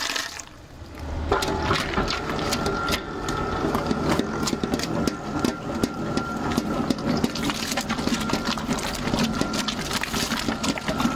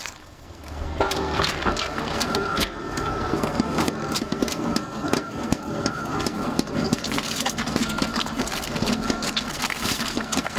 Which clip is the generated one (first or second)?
second